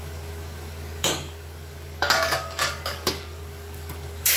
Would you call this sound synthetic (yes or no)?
yes